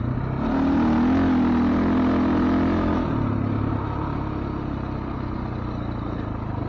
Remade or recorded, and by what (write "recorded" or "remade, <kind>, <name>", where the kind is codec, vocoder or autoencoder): recorded